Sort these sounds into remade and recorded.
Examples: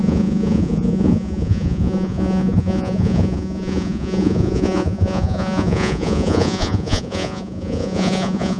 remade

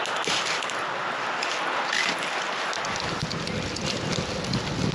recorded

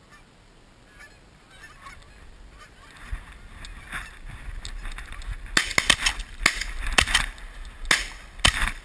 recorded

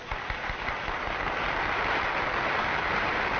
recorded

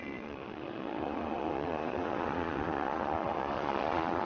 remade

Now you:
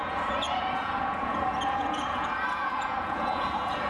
remade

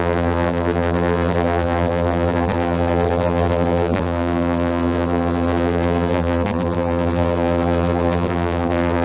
remade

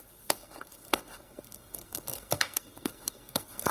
remade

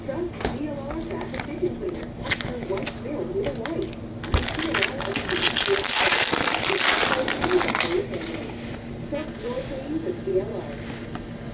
recorded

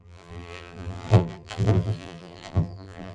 remade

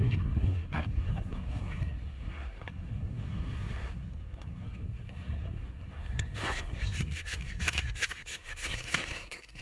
remade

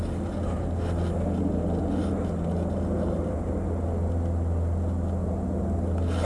recorded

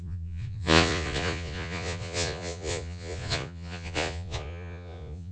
remade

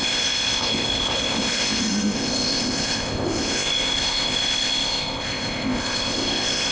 remade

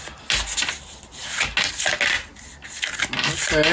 recorded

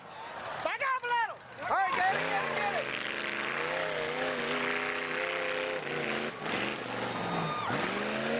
recorded